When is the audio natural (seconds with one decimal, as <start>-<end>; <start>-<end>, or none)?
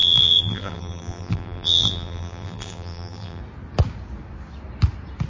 3.4-5.3